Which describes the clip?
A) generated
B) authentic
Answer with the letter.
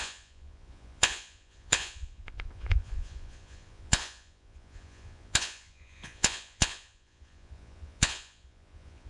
A